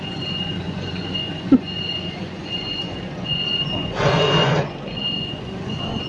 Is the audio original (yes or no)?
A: no